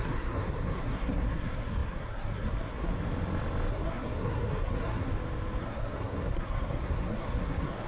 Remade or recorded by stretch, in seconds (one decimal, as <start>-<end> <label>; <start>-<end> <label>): 0.0-2.9 remade; 2.9-3.7 recorded; 3.7-5.1 remade; 5.1-5.6 recorded; 5.6-7.9 remade